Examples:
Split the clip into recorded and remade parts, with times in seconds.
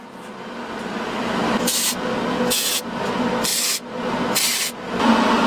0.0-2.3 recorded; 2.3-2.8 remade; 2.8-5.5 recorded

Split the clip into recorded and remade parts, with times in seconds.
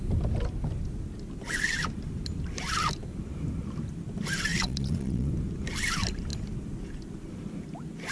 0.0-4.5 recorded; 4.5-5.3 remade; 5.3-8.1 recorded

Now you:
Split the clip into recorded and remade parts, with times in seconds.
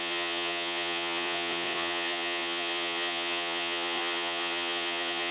0.0-5.3 remade